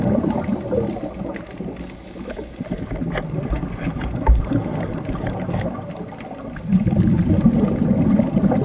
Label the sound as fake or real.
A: real